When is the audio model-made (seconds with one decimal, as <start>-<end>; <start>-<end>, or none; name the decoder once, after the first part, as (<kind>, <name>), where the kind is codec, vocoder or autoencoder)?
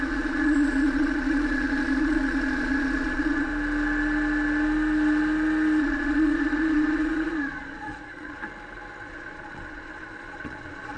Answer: 0.0-3.5 (vocoder, Vocos); 5.8-8.4; 9.0-11.0